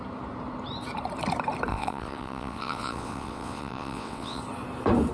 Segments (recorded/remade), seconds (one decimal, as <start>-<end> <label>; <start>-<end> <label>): 0.0-1.7 recorded; 1.7-4.4 remade; 4.4-5.1 recorded